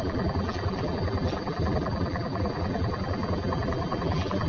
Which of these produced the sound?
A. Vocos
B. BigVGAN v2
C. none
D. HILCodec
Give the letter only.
B